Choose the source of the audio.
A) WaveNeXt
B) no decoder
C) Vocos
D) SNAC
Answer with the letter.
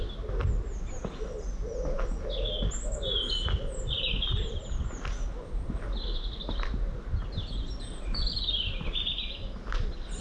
B